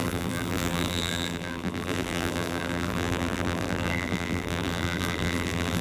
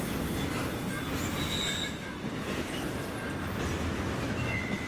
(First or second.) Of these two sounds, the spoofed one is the first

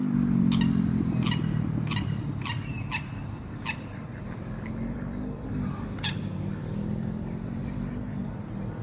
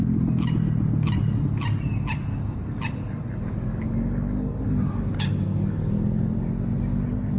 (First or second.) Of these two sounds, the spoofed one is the first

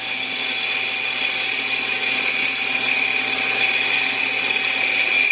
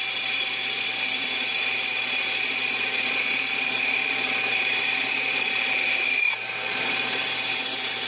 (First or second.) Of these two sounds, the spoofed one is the second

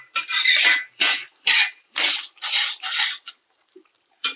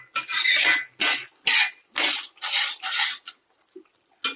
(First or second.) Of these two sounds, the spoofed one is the first